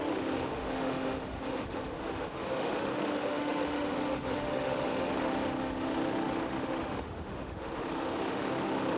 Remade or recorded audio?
remade